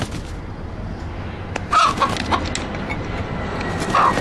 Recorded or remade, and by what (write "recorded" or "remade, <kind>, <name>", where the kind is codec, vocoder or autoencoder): recorded